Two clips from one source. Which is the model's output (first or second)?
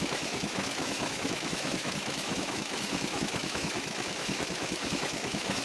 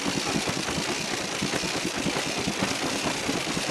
first